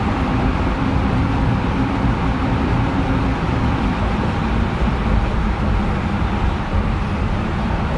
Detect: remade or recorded remade